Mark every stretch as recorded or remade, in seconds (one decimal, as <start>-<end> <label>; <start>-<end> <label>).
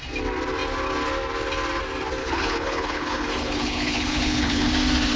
0.0-2.2 recorded; 2.2-4.7 remade; 4.7-5.2 recorded